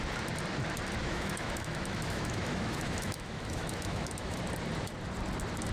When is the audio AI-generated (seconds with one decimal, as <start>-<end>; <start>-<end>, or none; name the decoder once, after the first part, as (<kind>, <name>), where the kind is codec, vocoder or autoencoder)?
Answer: 1.0-4.4 (autoencoder, DAC-VAE)